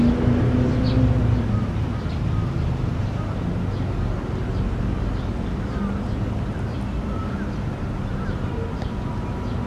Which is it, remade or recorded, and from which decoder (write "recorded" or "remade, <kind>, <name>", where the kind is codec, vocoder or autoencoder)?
recorded